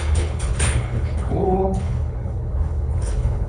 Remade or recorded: remade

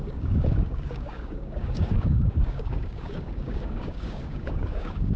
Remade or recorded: remade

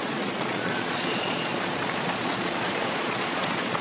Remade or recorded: remade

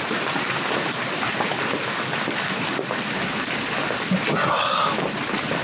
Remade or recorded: recorded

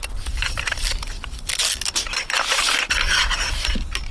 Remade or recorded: recorded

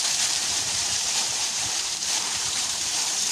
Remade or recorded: remade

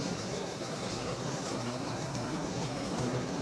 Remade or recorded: remade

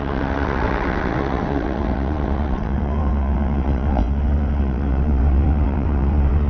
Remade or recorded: remade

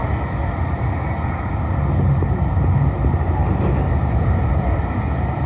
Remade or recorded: recorded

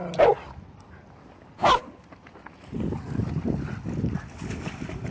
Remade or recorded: recorded